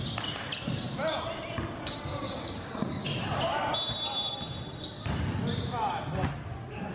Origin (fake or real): real